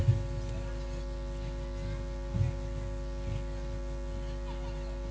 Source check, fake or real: real